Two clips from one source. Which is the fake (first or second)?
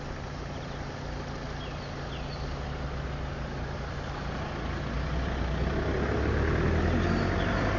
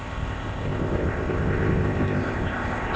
second